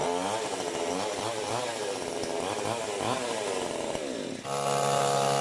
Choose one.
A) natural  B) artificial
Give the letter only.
A